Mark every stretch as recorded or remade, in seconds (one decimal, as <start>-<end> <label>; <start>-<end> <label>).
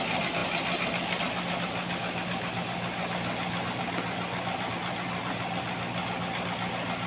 0.0-7.1 recorded